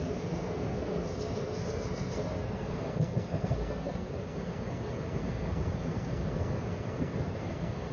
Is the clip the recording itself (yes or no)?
no